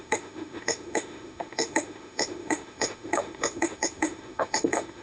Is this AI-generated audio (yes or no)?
yes